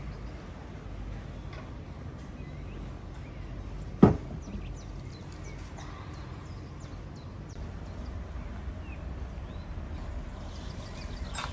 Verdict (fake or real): real